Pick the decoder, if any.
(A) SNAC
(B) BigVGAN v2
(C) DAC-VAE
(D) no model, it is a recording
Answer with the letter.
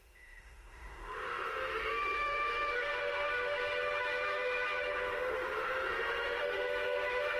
C